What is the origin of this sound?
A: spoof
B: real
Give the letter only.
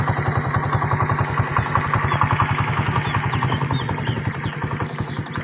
B